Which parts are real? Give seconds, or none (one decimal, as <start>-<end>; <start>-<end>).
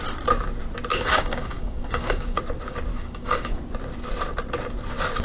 0.0-0.9; 2.4-2.9; 3.5-5.2